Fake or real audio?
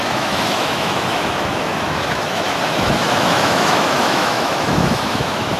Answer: fake